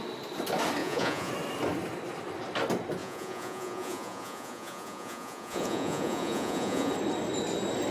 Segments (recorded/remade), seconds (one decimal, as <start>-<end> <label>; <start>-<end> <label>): 0.0-0.8 recorded; 0.8-1.3 remade; 1.3-3.0 recorded; 3.0-6.9 remade; 6.9-7.9 recorded